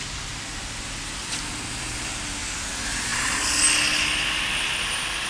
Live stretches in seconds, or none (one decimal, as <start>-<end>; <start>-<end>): 0.0-1.2; 2.3-5.3